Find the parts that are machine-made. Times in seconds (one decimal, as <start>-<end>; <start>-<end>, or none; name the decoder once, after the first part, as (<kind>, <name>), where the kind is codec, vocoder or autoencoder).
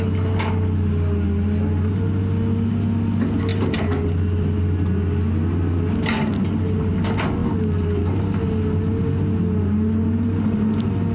none